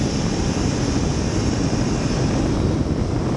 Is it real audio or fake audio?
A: real